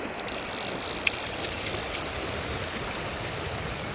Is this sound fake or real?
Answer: real